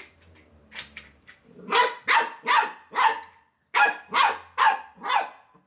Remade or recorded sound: recorded